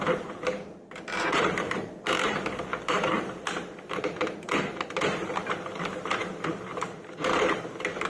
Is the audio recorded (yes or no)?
no